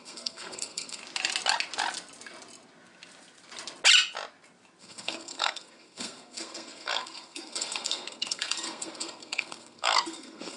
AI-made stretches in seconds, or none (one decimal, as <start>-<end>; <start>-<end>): 0.0-1.0; 4.8-10.6